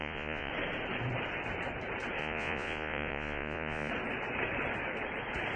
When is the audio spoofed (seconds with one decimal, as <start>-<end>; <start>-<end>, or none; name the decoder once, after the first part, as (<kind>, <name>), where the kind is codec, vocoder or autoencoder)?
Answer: 0.0-0.5 (vocoder, Vocos); 2.2-3.9